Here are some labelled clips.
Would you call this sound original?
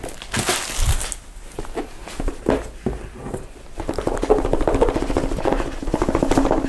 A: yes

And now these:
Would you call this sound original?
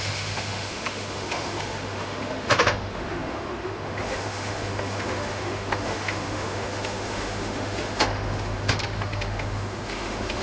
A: no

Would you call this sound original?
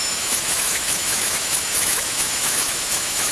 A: no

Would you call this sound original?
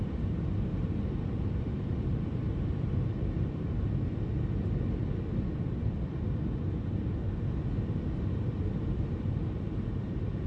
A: yes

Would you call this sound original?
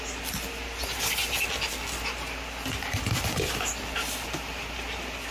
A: yes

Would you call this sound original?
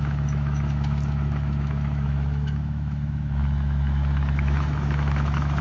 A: no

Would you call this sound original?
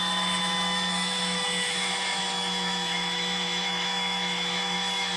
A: no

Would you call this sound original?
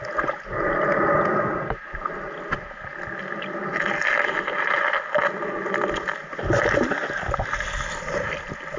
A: yes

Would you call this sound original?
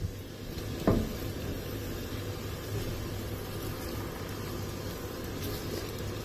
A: yes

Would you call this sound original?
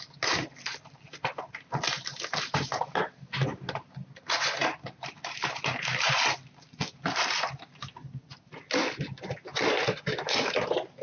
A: yes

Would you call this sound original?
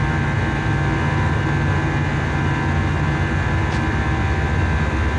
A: yes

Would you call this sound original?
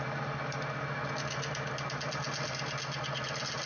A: yes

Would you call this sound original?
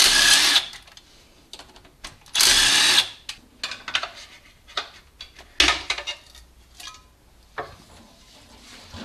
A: yes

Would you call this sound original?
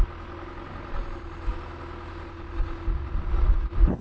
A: yes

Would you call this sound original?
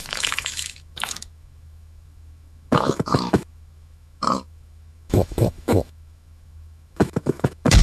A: no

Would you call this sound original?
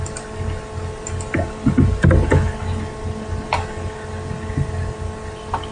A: yes